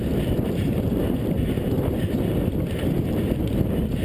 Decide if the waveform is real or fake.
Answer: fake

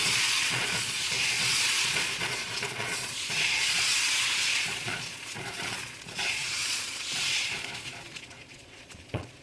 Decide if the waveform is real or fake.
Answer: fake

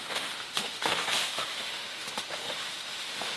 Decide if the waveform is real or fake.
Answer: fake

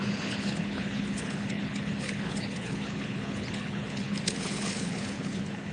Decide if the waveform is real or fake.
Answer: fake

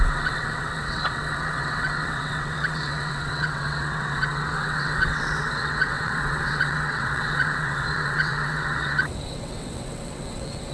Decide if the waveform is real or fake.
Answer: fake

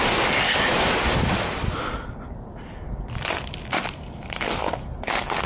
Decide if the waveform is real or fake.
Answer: real